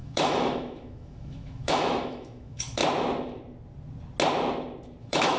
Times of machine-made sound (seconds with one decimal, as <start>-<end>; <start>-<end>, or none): 0.0-2.8; 5.0-5.4